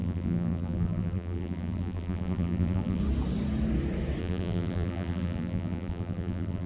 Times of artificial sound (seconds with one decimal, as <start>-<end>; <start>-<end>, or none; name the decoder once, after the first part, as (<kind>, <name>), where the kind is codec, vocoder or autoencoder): 0.0-3.0 (vocoder, BigVGAN v2); 4.2-6.7